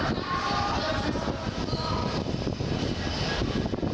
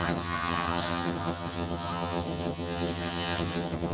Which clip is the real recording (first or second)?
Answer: first